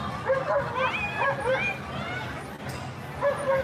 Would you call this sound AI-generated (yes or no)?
no